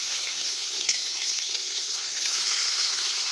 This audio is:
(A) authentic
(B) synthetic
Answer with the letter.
B